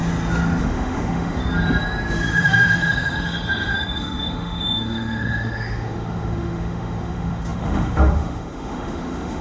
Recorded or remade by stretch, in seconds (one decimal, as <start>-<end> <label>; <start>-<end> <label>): 0.0-0.6 recorded; 0.6-1.4 remade; 1.4-2.3 recorded; 2.3-9.4 remade